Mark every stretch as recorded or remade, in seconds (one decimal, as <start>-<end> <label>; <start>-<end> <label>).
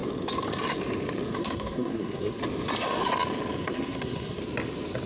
0.0-1.4 recorded; 1.4-2.4 remade; 2.4-3.6 recorded; 3.6-4.4 remade; 4.4-5.1 recorded